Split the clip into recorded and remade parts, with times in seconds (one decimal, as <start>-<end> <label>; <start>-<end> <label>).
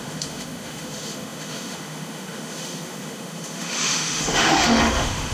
0.0-5.3 remade